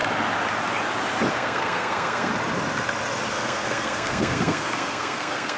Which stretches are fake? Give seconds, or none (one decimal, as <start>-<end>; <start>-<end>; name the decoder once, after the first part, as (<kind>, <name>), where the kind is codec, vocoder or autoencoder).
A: 1.3-2.3 (codec, SNAC); 3.3-5.6